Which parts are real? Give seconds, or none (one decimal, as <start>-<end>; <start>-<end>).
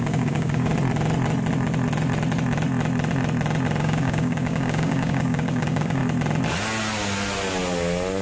0.7-3.8; 6.0-8.2